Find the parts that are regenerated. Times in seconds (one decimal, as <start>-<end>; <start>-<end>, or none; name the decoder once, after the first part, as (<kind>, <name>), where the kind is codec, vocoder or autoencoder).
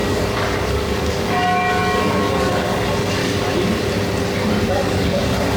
0.0-3.2 (codec, DAC); 4.7-5.6